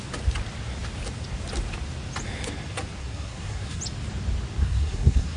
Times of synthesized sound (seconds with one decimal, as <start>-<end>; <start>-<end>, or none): 3.0-3.8; 4.6-5.4